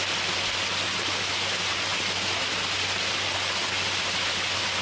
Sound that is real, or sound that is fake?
real